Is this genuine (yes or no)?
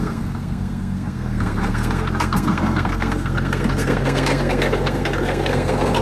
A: no